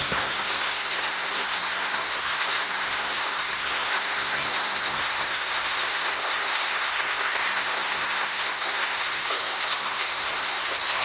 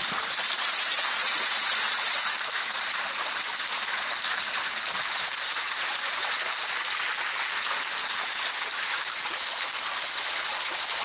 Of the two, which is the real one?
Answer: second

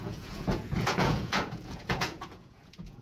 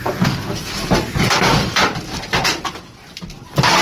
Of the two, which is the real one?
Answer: second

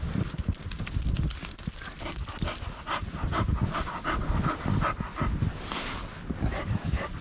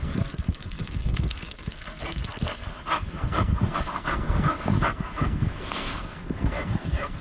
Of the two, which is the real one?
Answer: first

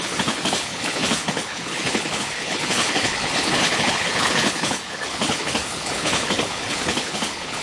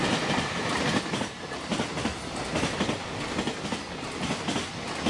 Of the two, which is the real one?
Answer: second